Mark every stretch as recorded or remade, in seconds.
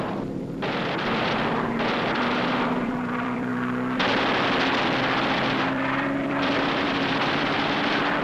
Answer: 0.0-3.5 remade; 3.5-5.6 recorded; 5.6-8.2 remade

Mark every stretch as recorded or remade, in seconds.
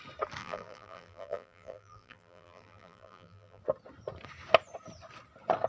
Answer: 0.0-0.4 recorded; 0.4-3.6 remade; 3.6-5.7 recorded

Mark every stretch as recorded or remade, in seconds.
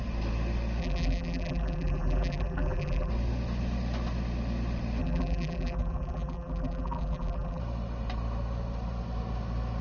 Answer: 0.0-0.8 recorded; 0.8-3.1 remade; 3.1-5.0 recorded; 5.0-7.6 remade; 7.6-9.8 recorded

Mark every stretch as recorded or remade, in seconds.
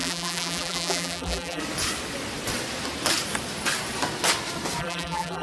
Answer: 0.0-1.6 remade; 1.6-4.8 recorded; 4.8-5.4 remade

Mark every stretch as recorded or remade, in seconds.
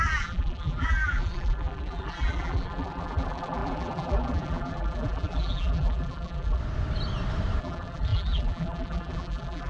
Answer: 0.0-6.6 remade; 6.6-7.6 recorded; 7.6-9.7 remade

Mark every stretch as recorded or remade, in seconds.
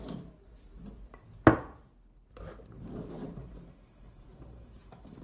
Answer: 0.0-3.2 recorded; 3.2-5.2 remade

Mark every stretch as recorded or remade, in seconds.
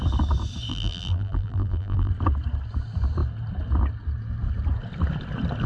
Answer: 0.0-0.7 recorded; 0.7-2.1 remade; 2.1-5.7 recorded